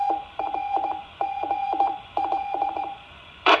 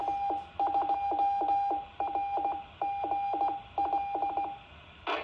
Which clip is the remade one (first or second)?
first